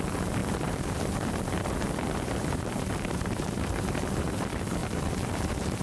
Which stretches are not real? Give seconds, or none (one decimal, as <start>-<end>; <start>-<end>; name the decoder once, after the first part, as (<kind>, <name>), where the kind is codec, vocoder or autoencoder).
0.0-5.8 (vocoder, BigVGAN v2)